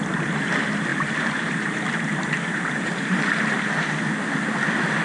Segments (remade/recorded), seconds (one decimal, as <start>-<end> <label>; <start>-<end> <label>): 0.0-0.9 recorded; 0.9-3.9 remade; 3.9-5.0 recorded